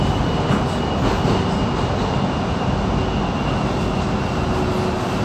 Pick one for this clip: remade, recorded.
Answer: recorded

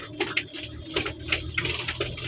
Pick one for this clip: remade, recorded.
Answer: recorded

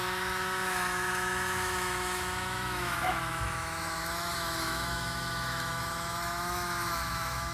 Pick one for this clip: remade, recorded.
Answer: remade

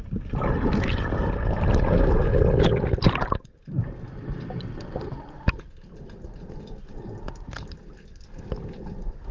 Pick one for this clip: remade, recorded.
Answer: recorded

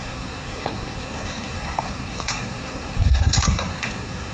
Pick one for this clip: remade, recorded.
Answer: remade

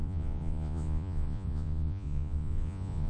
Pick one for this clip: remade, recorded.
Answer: remade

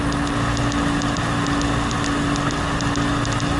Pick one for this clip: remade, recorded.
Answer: recorded